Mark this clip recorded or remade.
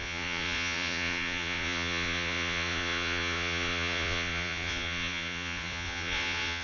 remade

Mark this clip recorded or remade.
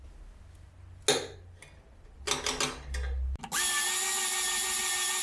recorded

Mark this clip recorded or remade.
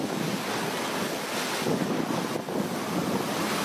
recorded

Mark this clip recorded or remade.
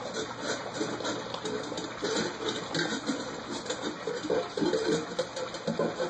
recorded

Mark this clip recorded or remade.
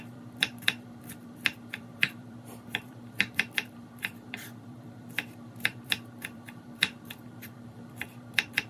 remade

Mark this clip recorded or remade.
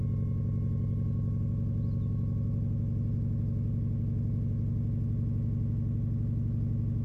recorded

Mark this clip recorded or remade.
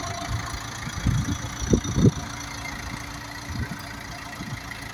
recorded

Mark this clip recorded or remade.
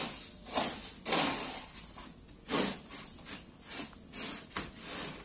recorded